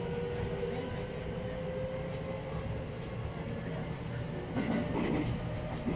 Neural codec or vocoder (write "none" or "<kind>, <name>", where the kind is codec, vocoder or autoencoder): none